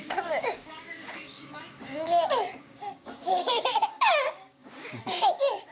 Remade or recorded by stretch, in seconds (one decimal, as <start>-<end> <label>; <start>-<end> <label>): 0.0-5.7 remade